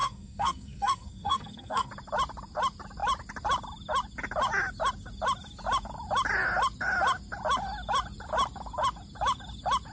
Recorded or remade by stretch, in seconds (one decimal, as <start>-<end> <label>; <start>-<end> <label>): 0.0-1.9 remade; 1.9-9.9 recorded